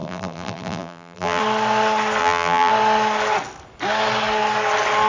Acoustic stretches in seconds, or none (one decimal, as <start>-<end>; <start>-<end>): 1.4-2.2; 2.7-5.1